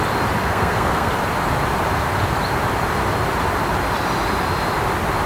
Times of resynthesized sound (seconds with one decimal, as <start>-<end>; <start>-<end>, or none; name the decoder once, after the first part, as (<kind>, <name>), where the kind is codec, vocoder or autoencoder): 0.4-1.1 (codec, SNAC)

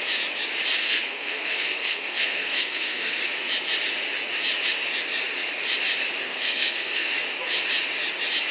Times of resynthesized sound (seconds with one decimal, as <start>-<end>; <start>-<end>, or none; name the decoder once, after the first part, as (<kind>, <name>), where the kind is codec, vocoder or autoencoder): 0.8-3.2 (codec, SNAC); 6.2-7.1

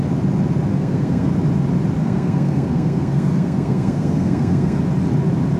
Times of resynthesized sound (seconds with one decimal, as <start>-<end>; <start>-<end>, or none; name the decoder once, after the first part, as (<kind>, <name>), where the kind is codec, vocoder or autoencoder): 0.7-1.3 (codec, SNAC); 2.0-4.8

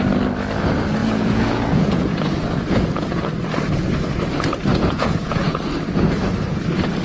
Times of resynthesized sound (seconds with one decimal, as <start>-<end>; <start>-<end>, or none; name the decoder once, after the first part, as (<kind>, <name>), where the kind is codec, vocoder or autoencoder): 1.0-3.3 (vocoder, Vocos); 4.7-5.6

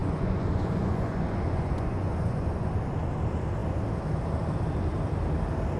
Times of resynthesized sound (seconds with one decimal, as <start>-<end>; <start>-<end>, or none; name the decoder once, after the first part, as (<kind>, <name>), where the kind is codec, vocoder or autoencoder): 0.0-2.7 (vocoder, Vocos)

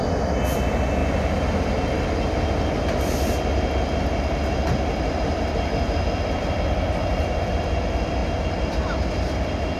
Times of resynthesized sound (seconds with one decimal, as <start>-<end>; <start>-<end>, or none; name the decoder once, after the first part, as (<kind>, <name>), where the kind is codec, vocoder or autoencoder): 0.0-1.0 (vocoder, BigVGAN v2); 5.4-9.8